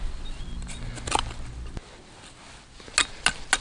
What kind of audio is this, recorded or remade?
recorded